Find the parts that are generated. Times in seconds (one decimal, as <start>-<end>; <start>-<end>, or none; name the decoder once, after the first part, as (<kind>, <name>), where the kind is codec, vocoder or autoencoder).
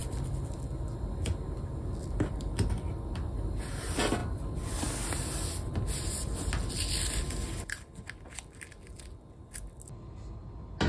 none